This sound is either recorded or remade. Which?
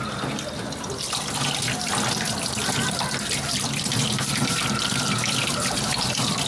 recorded